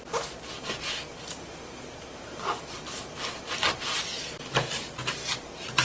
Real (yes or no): yes